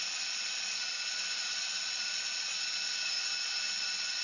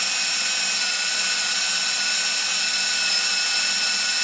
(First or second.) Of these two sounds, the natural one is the second